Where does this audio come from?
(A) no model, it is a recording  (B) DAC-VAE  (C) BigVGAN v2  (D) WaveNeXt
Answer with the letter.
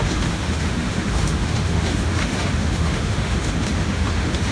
B